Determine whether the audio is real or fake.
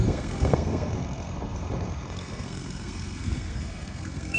fake